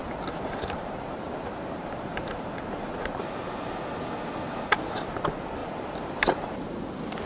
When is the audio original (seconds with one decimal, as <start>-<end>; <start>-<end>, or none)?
3.4-5.6; 6.7-7.3